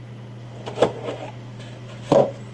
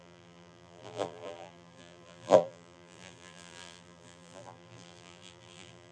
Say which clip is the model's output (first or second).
second